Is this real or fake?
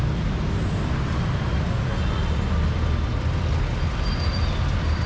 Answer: real